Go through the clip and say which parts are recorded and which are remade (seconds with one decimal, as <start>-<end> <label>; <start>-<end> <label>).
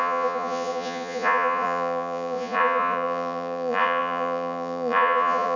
0.0-5.6 remade